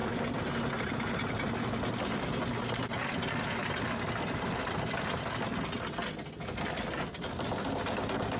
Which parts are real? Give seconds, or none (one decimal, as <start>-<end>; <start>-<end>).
0.0-8.4